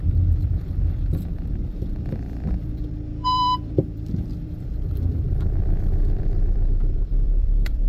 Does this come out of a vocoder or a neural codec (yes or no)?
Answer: yes